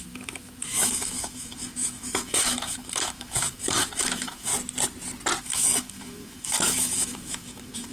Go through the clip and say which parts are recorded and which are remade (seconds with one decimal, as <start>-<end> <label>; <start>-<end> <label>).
0.0-4.5 remade; 4.5-5.4 recorded; 5.4-7.9 remade